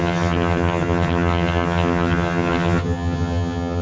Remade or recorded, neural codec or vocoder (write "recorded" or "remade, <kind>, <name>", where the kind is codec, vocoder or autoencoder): remade, vocoder, HiFi-GAN